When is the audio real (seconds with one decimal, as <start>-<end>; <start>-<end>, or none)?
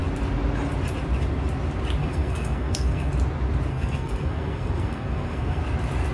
0.0-2.0; 3.1-3.7; 5.6-6.1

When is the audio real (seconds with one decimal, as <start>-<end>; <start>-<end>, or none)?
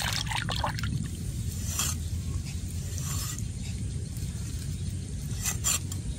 0.0-6.2